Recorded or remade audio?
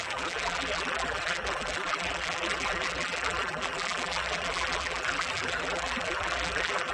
remade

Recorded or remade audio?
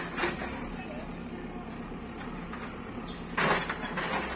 recorded